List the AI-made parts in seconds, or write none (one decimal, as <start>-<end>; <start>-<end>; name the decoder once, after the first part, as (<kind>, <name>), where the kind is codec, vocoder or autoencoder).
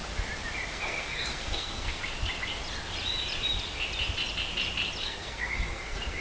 0.7-2.0 (codec, SNAC); 5.0-6.2